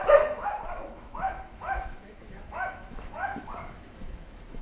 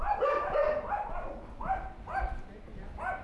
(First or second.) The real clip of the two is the second